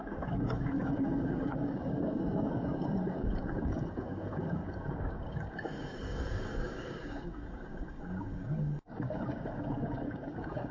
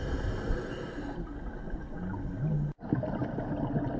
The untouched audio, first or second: second